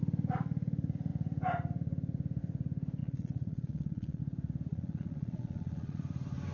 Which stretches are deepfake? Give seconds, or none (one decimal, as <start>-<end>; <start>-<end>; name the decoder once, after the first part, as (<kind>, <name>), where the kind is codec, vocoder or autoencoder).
3.0-4.2 (vocoder, Vocos); 4.7-6.0